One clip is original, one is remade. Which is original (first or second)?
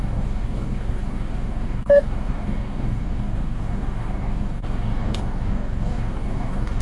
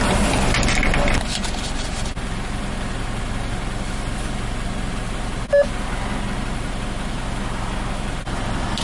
second